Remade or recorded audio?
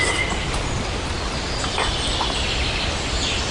recorded